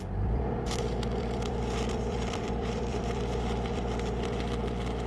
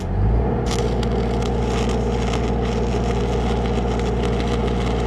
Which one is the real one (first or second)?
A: second